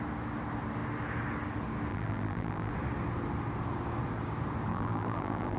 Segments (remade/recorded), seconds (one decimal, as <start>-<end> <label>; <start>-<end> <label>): 0.0-1.9 recorded; 1.9-2.7 remade; 2.7-4.7 recorded; 4.7-5.6 remade